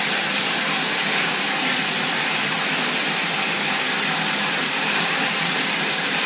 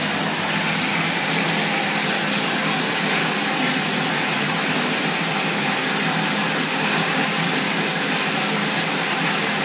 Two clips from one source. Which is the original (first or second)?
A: second